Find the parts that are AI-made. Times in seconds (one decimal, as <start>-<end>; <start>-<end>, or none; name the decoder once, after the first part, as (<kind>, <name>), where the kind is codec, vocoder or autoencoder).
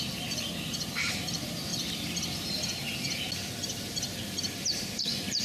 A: 0.0-1.7 (vocoder, BigVGAN v2); 3.8-5.4